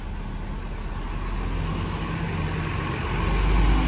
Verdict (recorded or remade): recorded